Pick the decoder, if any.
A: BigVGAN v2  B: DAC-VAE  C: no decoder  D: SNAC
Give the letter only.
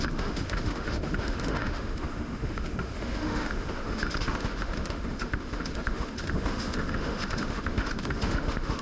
B